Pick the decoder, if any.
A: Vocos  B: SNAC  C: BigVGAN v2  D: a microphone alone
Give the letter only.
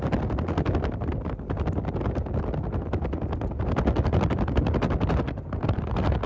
D